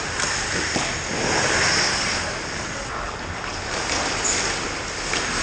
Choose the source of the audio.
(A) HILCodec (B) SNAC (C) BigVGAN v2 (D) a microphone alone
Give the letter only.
D